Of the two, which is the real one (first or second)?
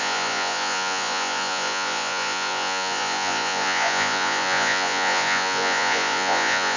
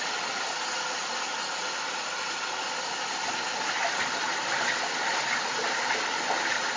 second